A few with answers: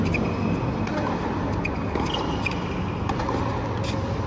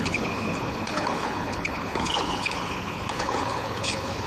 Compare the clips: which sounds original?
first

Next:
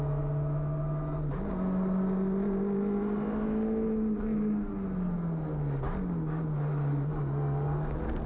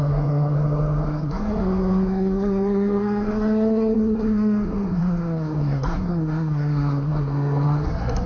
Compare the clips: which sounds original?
first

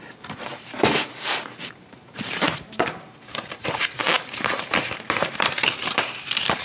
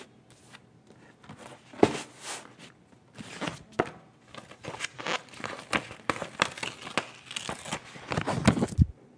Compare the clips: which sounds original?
second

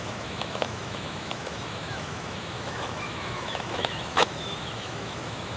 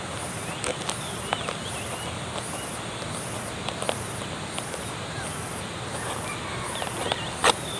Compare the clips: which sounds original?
second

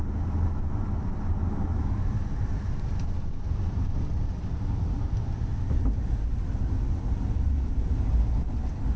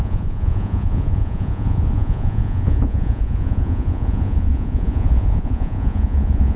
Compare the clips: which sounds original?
first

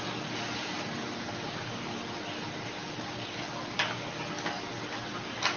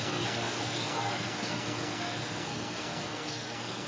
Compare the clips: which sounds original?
first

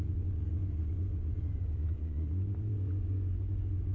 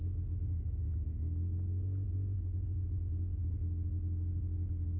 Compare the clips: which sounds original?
second